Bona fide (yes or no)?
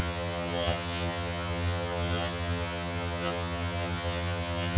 no